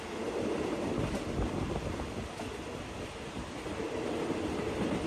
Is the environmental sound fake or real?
real